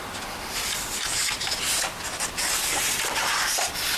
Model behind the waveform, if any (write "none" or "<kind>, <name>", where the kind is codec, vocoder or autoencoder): none